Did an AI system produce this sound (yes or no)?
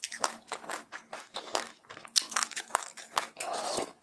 yes